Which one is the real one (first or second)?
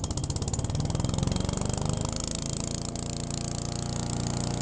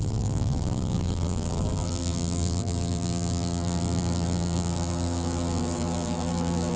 first